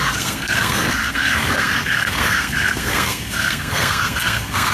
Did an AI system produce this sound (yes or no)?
yes